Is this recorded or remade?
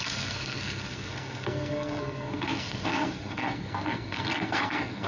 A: remade